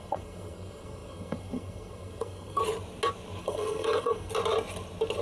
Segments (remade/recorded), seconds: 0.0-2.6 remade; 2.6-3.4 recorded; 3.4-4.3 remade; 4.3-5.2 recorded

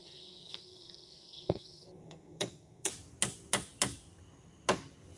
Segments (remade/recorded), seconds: 0.0-2.9 remade; 2.9-5.2 recorded

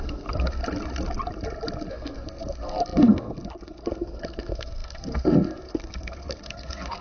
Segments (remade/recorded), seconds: 0.0-0.6 remade; 0.6-1.9 recorded; 1.9-7.0 remade

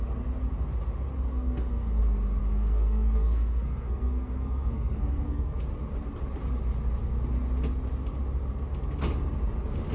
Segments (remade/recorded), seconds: 0.0-1.3 recorded; 1.3-2.0 remade; 2.0-2.4 recorded; 2.4-5.6 remade; 5.6-9.9 recorded

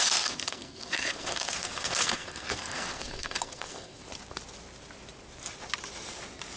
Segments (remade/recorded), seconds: 0.0-4.0 remade; 4.0-6.6 recorded

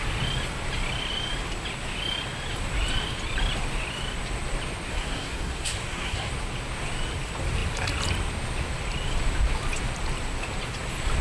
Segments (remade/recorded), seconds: 0.0-4.9 recorded; 4.9-6.3 remade; 6.3-11.2 recorded